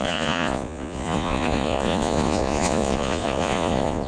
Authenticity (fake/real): fake